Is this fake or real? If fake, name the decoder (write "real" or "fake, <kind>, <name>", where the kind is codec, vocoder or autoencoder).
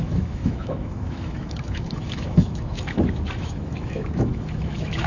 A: fake, autoencoder, DAC-VAE